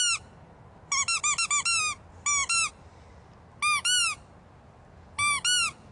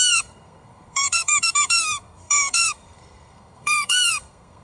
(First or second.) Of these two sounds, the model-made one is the second